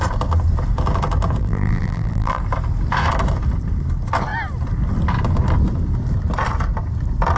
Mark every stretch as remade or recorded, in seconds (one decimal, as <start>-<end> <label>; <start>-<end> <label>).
0.0-1.4 recorded; 1.4-2.4 remade; 2.4-7.4 recorded